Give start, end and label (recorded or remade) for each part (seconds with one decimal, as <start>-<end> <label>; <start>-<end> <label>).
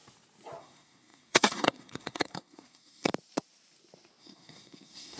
0.0-0.6 recorded; 0.6-3.1 remade; 3.1-4.2 recorded; 4.2-5.2 remade